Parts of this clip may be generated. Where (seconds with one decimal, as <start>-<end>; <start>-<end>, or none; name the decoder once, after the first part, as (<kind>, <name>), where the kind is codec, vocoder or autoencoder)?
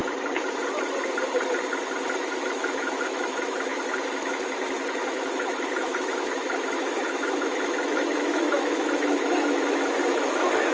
2.2-10.7 (autoencoder, DAC-VAE)